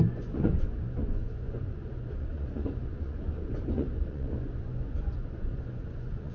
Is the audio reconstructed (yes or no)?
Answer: yes